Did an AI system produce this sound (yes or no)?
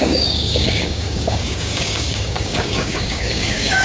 yes